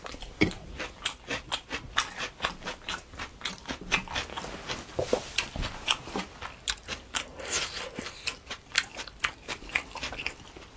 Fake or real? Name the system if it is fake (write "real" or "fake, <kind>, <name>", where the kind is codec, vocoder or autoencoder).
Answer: real